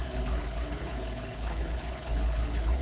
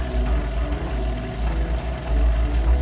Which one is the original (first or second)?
second